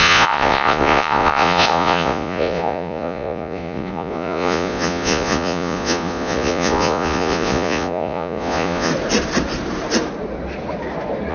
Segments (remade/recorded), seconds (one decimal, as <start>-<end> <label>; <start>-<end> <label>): 0.0-8.9 remade; 8.9-11.3 recorded